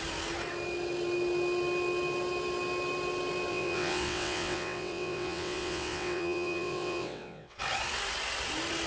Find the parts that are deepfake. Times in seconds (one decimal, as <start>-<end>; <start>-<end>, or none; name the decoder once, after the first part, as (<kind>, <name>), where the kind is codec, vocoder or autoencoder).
3.5-7.6 (vocoder, WaveNeXt)